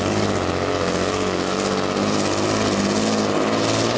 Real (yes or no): yes